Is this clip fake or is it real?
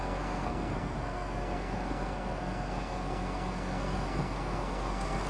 fake